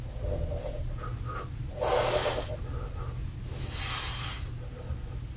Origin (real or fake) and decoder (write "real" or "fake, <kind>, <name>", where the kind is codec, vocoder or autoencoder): real